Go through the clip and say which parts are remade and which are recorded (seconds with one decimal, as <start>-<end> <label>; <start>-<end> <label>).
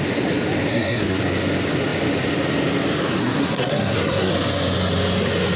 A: 0.0-0.7 recorded; 0.7-1.2 remade; 1.2-3.2 recorded; 3.2-4.3 remade; 4.3-5.6 recorded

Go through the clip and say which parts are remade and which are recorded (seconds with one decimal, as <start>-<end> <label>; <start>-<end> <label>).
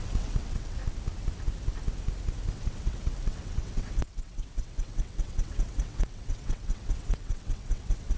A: 0.0-0.8 remade; 0.8-2.5 recorded; 2.5-8.2 remade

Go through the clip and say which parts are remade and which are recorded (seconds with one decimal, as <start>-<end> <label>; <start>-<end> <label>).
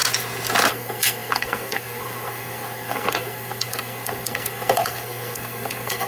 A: 0.0-0.7 recorded; 0.7-6.1 remade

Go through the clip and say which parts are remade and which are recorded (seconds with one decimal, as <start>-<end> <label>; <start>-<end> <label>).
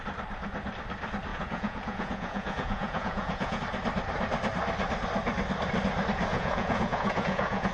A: 0.0-1.3 recorded; 1.3-3.6 remade; 3.6-6.3 recorded; 6.3-7.7 remade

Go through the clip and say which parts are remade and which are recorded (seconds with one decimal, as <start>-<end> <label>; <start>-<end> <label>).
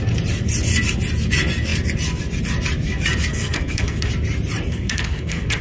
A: 0.0-3.3 recorded; 3.3-4.1 remade; 4.1-4.7 recorded; 4.7-5.6 remade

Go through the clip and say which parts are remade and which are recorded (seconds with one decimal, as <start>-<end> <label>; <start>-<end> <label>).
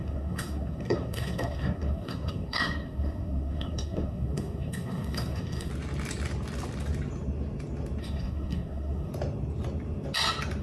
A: 0.0-5.7 remade; 5.7-8.0 recorded; 8.0-9.1 remade; 9.1-10.6 recorded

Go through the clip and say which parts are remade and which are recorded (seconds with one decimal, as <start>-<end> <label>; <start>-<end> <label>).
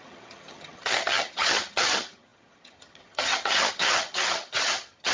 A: 0.0-5.1 remade